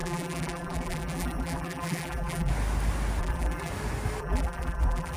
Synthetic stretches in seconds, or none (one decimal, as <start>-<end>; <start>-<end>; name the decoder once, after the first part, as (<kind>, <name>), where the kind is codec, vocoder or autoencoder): 0.0-2.5 (vocoder, BigVGAN v2); 3.2-3.7; 4.2-5.2